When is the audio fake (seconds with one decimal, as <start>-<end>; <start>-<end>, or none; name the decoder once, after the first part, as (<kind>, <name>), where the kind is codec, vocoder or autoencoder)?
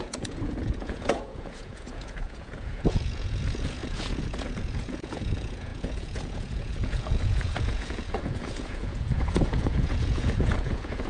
0.0-11.1 (vocoder, Vocos)